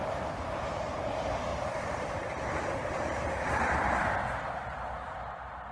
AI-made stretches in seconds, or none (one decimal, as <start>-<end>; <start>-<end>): 1.5-4.9